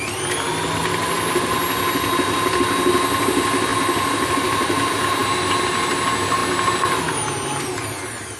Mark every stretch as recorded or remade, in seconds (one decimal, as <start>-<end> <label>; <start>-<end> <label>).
0.0-8.4 recorded